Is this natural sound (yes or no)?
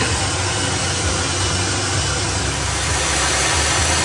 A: yes